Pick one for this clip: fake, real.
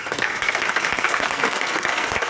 fake